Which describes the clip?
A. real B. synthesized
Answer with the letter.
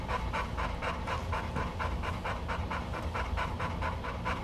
A